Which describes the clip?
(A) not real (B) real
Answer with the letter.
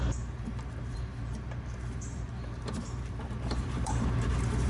A